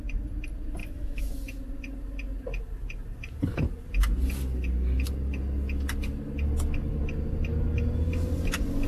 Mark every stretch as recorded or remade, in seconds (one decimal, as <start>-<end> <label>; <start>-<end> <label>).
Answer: 0.0-0.8 recorded; 0.8-1.3 remade; 1.3-8.9 recorded